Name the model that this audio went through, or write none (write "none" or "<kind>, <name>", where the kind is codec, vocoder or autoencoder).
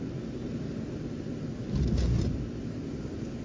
none